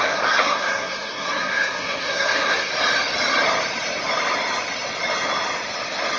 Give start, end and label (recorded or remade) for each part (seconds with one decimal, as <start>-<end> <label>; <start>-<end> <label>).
0.0-2.7 remade; 2.7-6.2 recorded